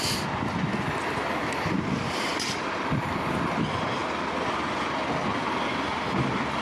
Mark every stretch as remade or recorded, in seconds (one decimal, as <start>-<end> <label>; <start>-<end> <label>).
0.0-6.6 recorded